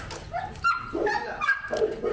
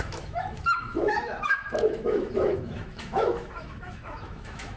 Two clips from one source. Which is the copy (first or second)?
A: second